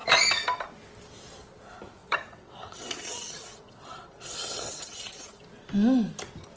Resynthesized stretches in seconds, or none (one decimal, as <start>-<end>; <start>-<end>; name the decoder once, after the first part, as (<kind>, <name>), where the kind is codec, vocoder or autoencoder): 2.0-5.4 (vocoder, WaveNeXt)